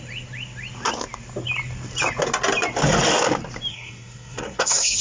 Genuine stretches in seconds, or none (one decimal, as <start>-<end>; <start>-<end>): 0.0-3.7